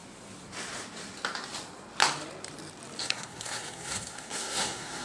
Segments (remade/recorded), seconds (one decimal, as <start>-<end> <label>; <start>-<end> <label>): 0.0-3.0 recorded; 3.0-5.0 remade